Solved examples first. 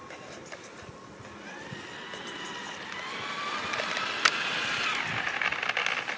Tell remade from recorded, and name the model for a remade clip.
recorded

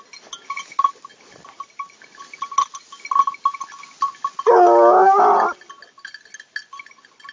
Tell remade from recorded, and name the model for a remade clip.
recorded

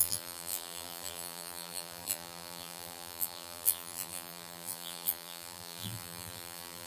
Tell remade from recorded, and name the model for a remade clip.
remade, vocoder, BigVGAN v2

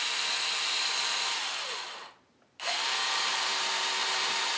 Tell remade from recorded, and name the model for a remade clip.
remade, vocoder, BigVGAN v2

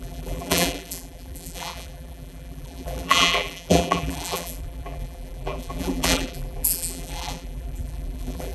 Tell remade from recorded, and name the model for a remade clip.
remade, vocoder, BigVGAN v2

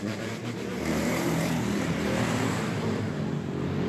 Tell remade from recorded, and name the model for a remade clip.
remade, vocoder, BigVGAN v2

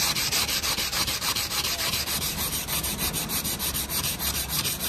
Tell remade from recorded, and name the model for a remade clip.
remade, vocoder, BigVGAN v2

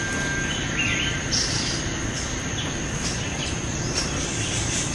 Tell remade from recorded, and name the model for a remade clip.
recorded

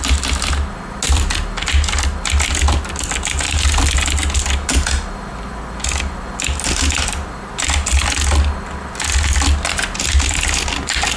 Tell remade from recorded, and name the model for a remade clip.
recorded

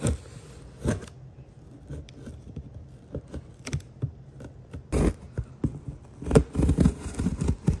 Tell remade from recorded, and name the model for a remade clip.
recorded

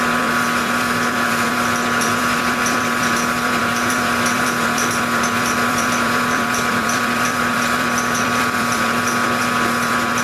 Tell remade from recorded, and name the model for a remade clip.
remade, vocoder, BigVGAN v2